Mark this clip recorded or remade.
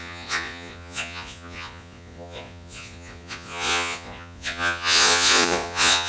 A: remade